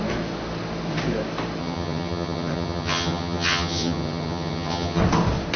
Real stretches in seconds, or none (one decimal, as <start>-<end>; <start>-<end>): 0.0-1.6; 5.0-5.6